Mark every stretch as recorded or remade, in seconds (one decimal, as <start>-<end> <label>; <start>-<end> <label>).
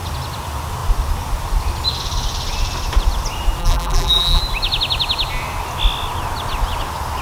0.0-3.6 recorded; 3.6-4.4 remade; 4.4-7.2 recorded